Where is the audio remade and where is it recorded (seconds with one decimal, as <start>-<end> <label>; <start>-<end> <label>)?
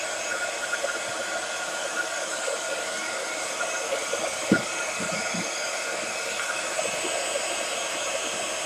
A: 0.0-1.8 recorded; 1.8-6.6 remade; 6.6-8.7 recorded